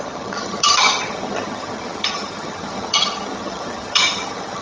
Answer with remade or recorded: remade